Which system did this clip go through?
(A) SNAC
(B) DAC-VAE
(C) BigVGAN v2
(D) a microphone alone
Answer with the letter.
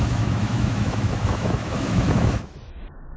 B